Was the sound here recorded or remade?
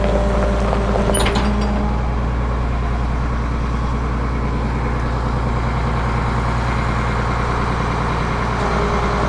recorded